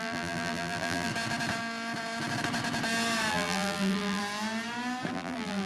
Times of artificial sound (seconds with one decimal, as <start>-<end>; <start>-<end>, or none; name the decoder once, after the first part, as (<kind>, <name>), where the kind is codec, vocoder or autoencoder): 0.0-1.1 (vocoder, BigVGAN v2); 3.3-4.2; 5.1-5.7